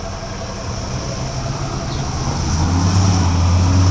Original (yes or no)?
yes